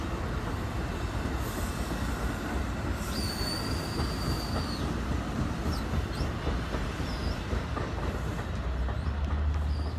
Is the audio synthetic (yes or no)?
no